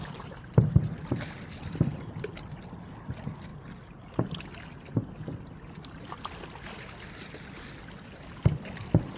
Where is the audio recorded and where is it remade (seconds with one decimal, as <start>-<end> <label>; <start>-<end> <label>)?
0.0-9.2 recorded